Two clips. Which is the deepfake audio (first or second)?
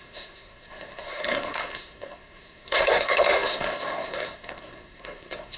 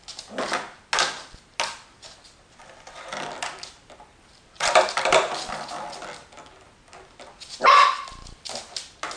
first